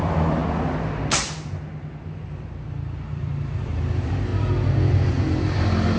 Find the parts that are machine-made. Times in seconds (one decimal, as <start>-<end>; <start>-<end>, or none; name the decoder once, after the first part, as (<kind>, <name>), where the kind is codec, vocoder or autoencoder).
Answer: 0.0-0.4 (vocoder, BigVGAN v2); 3.1-4.3; 5.1-6.0